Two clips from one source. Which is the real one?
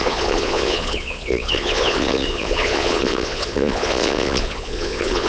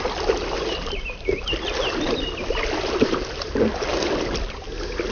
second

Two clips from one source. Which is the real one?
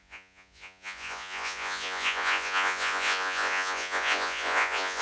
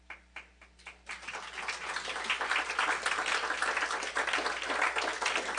second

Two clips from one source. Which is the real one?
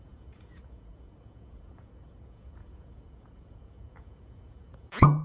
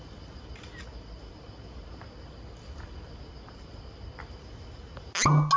second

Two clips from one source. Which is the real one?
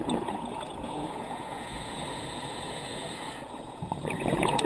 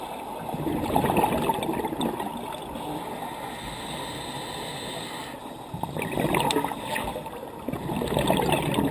second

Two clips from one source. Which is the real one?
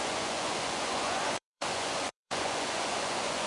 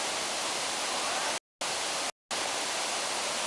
second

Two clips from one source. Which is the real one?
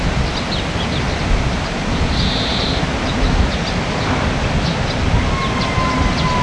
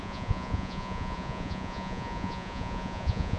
first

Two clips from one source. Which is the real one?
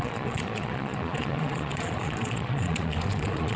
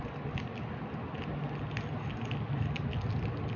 second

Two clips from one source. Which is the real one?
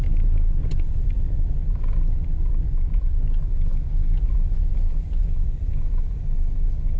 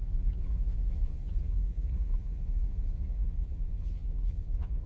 first